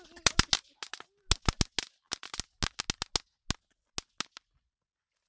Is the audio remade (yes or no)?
no